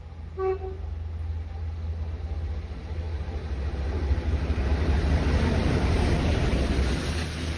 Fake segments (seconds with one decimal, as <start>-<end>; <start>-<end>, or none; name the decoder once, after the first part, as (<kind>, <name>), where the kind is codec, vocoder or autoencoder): none